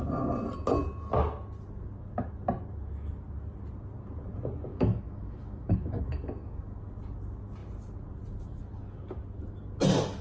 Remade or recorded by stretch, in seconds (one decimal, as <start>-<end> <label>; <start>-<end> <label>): 0.0-4.7 recorded; 4.7-6.8 remade; 6.8-10.2 recorded